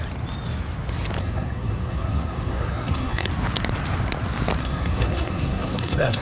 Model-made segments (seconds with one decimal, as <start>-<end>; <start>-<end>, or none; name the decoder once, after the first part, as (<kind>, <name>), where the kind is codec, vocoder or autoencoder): 1.2-3.3 (codec, SNAC); 4.6-6.2